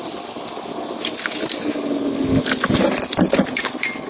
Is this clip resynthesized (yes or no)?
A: no